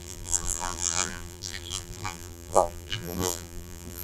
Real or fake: fake